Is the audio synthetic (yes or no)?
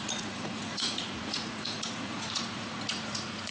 yes